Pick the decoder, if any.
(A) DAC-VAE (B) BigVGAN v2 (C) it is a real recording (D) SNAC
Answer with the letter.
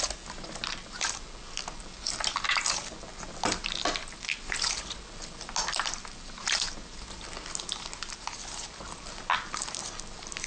C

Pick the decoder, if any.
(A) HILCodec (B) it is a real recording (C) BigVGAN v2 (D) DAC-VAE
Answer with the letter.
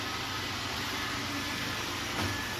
B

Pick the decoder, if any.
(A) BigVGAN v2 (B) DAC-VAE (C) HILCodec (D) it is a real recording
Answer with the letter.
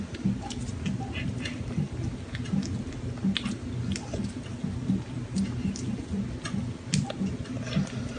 D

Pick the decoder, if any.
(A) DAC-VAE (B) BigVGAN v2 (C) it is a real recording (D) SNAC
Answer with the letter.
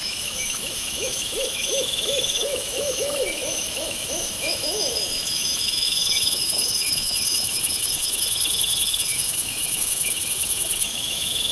A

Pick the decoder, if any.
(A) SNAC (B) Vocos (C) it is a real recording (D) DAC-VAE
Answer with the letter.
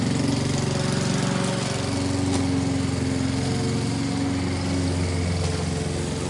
C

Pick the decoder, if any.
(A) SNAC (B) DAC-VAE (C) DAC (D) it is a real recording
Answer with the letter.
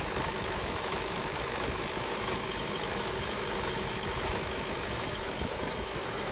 B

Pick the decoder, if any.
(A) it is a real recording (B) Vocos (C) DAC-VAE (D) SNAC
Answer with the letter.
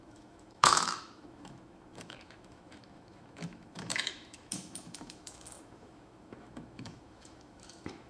C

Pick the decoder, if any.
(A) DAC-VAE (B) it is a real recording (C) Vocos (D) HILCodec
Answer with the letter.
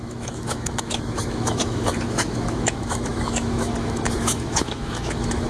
A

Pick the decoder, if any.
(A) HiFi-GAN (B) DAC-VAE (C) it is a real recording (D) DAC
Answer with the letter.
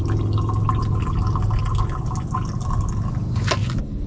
C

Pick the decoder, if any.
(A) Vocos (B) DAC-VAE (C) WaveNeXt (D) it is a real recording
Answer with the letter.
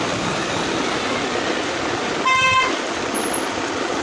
D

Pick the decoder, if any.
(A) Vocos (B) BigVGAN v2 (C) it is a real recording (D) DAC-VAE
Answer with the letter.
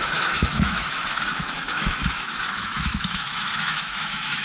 D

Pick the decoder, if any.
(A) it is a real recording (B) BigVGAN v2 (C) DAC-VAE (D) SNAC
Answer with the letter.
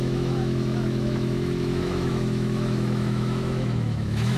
C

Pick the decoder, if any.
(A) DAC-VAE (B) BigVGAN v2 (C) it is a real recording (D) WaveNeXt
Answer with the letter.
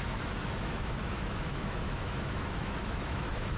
A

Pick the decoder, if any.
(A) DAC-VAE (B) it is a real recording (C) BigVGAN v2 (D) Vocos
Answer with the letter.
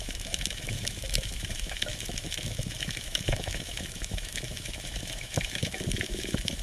A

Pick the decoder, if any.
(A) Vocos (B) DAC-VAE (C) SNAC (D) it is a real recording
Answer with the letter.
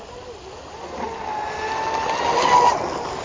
D